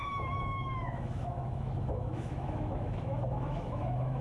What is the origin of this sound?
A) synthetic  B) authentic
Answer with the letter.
A